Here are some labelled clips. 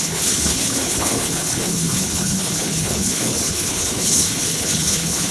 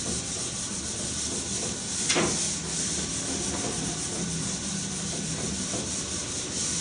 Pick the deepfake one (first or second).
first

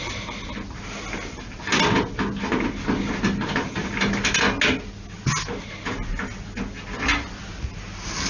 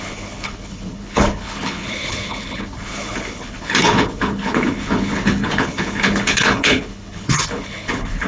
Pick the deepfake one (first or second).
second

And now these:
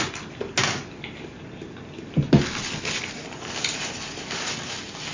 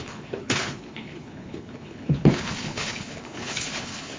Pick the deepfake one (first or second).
second